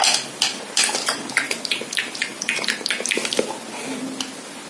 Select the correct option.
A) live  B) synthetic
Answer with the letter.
A